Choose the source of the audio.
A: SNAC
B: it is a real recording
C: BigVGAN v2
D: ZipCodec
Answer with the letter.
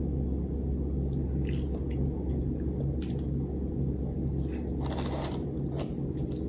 B